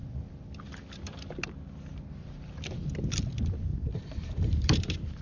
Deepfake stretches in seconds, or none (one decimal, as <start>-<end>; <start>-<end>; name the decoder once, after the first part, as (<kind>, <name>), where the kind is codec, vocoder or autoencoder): 3.7-5.2 (vocoder, BigVGAN v2)